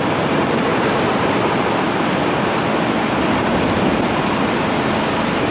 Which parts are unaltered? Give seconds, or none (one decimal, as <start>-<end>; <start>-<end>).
0.0-5.5